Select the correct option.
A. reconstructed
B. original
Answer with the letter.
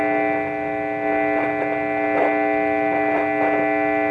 B